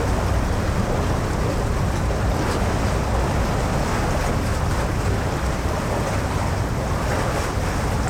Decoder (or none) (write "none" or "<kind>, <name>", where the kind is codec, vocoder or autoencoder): none